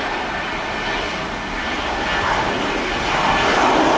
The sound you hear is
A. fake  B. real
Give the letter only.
B